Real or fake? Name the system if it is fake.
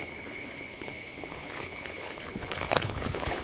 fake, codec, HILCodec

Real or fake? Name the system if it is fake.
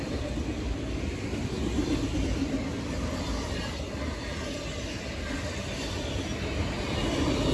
real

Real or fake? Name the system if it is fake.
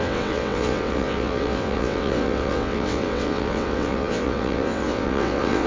fake, vocoder, WaveNeXt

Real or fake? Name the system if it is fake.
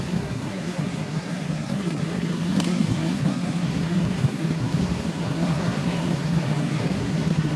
fake, codec, SNAC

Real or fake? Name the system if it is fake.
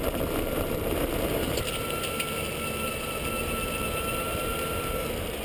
real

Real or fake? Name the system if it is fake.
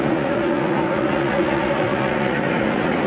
fake, vocoder, Vocos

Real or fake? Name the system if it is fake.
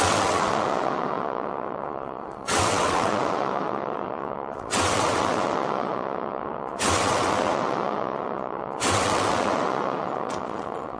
fake, vocoder, WaveNeXt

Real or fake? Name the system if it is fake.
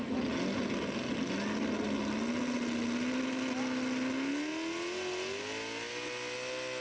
real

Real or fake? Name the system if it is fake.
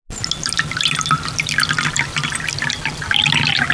real